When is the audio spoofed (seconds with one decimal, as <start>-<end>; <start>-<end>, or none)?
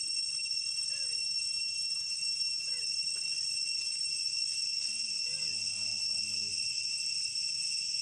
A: 1.2-2.7